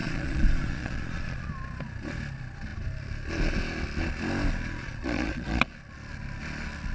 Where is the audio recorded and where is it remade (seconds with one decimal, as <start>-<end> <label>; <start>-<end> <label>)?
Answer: 0.0-1.5 remade; 1.5-4.8 recorded; 4.8-5.7 remade; 5.7-6.9 recorded